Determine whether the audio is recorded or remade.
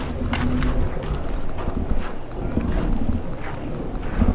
recorded